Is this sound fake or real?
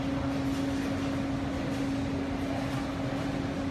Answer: real